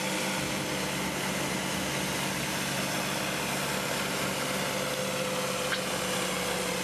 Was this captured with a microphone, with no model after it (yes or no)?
yes